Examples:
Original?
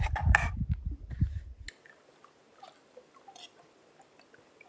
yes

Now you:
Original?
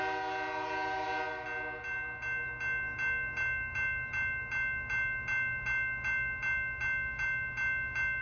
yes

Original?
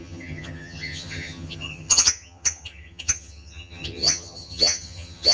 no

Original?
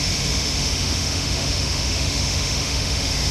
no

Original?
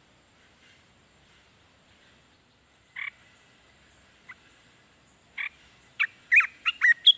yes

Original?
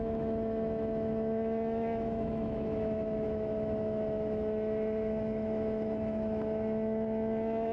no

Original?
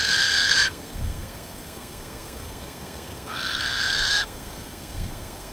no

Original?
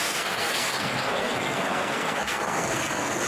no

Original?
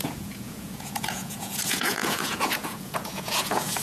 no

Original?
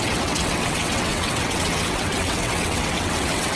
no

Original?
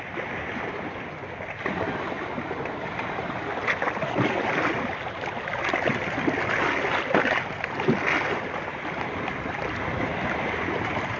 yes